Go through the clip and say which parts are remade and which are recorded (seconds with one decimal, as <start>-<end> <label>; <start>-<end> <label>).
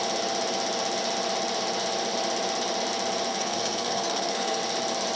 0.0-3.3 recorded; 3.3-4.6 remade; 4.6-5.2 recorded